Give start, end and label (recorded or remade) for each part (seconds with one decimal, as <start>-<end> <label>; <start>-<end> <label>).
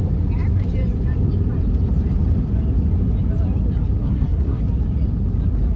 0.0-4.0 recorded; 4.0-4.6 remade; 4.6-5.8 recorded